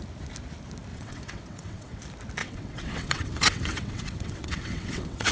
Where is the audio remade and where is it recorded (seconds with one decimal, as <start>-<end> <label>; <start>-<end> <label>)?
0.0-0.9 recorded; 0.9-2.0 remade; 2.0-2.4 recorded; 2.4-5.3 remade